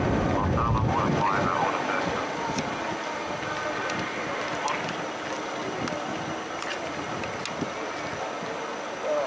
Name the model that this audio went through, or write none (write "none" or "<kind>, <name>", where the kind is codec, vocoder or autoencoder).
none